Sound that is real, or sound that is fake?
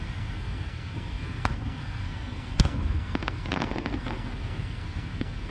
fake